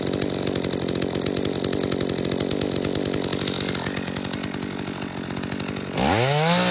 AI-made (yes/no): no